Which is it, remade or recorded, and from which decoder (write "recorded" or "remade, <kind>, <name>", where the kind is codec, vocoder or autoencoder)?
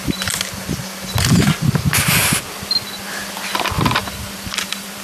recorded